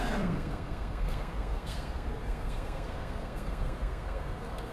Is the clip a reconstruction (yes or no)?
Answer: yes